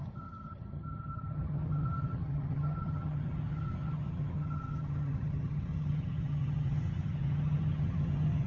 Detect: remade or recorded remade